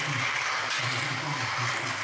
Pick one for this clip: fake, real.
real